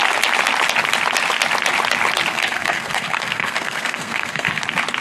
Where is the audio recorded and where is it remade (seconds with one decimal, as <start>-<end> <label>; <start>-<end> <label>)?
0.0-2.3 recorded; 2.3-4.6 remade; 4.6-5.0 recorded